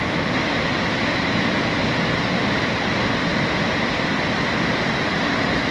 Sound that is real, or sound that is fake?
real